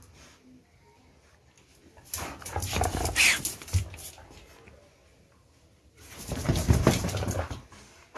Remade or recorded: recorded